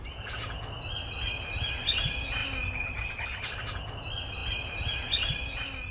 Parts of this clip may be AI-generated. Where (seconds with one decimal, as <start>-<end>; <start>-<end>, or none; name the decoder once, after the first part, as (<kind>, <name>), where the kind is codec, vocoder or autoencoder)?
none